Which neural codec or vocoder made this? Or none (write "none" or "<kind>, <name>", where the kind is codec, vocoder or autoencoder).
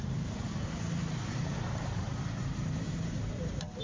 vocoder, BigVGAN v2